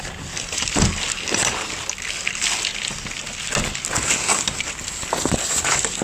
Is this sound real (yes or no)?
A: yes